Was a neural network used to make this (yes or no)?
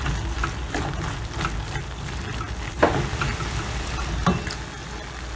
no